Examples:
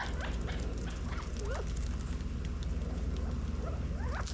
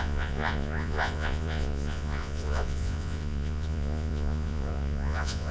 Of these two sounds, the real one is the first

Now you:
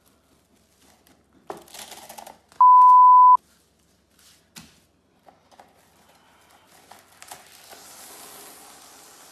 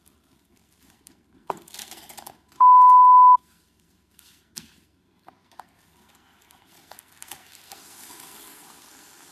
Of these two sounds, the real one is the first